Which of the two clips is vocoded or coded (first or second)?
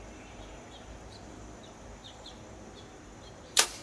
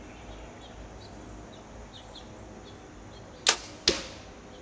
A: first